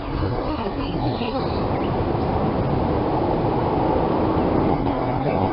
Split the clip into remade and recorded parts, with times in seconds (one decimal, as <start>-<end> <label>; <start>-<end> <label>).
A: 0.0-1.4 remade; 1.4-4.7 recorded; 4.7-5.5 remade

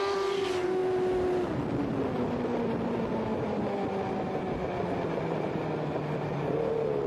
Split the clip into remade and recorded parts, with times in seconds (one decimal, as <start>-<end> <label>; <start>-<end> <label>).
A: 0.0-7.1 recorded

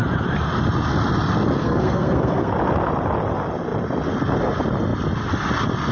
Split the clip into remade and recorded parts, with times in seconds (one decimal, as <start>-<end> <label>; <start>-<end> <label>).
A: 0.0-1.6 recorded; 1.6-2.5 remade; 2.5-5.9 recorded

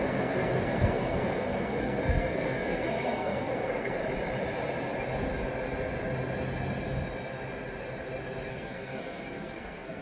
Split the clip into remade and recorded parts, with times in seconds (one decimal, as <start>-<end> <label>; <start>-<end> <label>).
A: 0.0-4.0 remade; 4.0-8.5 recorded; 8.5-10.0 remade

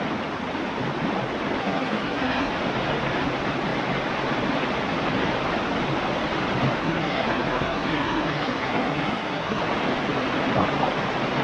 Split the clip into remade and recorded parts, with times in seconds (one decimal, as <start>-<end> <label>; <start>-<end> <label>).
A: 0.0-1.6 recorded; 1.6-2.5 remade; 2.5-6.8 recorded; 6.8-9.6 remade; 9.6-11.4 recorded

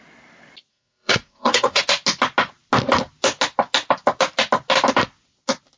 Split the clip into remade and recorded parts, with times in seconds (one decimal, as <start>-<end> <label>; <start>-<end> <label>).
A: 0.0-0.7 recorded; 0.7-1.8 remade; 1.8-5.8 recorded

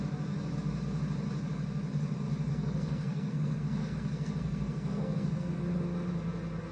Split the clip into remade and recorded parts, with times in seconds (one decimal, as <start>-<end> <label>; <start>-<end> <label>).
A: 0.0-2.5 recorded; 2.5-5.6 remade; 5.6-6.7 recorded

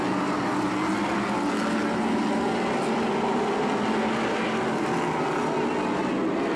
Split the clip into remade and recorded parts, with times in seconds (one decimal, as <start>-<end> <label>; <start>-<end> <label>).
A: 0.0-6.6 recorded